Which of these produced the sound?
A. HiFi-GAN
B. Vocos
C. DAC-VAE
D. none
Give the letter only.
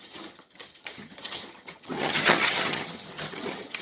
A